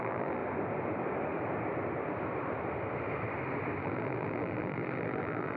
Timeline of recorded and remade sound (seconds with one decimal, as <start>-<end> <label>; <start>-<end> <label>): 0.0-0.4 remade; 0.4-3.8 recorded; 3.8-5.6 remade